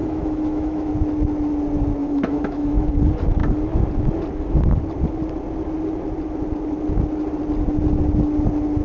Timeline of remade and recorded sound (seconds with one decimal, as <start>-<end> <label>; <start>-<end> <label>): 0.0-0.9 remade; 0.9-2.0 recorded; 2.0-2.9 remade; 2.9-8.8 recorded